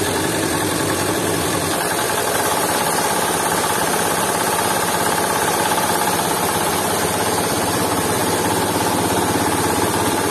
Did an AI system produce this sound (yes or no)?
yes